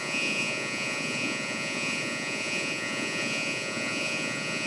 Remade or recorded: remade